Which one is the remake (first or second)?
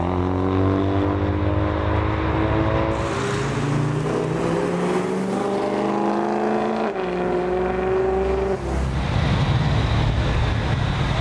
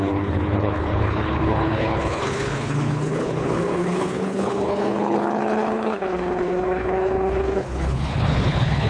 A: second